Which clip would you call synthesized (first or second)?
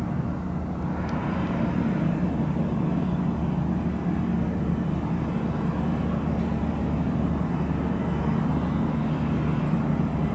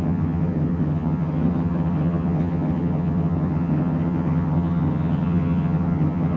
second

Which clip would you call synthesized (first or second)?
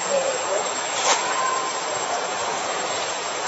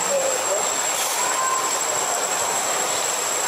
first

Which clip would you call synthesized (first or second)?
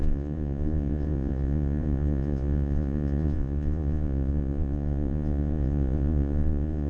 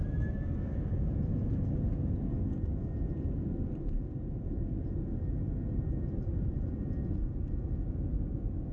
first